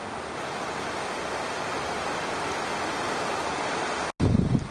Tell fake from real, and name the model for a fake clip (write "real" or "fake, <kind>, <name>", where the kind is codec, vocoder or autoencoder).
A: real